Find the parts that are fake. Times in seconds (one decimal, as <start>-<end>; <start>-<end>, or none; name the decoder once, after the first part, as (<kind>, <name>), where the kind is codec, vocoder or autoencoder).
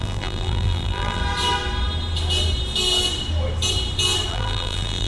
0.0-1.2 (vocoder, BigVGAN v2); 4.3-5.1